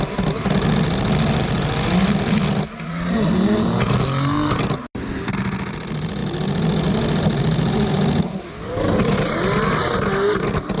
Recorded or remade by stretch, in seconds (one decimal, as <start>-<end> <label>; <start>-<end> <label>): 0.0-10.8 recorded